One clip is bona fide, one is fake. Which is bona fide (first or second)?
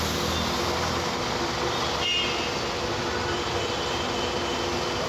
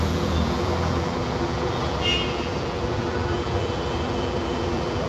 first